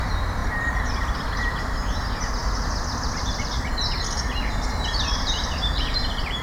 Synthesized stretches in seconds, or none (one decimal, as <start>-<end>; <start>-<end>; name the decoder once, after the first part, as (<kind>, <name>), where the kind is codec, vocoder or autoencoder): 0.0-2.4 (vocoder, BigVGAN v2); 5.4-6.4